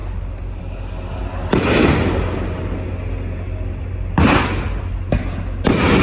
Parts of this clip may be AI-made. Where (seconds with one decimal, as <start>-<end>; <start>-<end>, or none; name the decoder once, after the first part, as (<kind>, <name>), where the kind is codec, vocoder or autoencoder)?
none